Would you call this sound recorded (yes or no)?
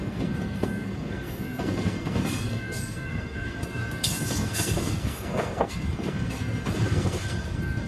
no